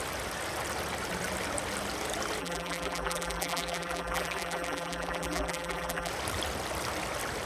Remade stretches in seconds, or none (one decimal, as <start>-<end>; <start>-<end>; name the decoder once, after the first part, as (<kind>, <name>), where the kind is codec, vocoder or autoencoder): 2.4-6.1 (vocoder, BigVGAN v2)